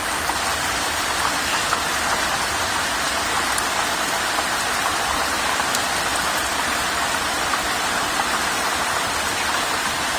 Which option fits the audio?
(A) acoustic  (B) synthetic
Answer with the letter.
A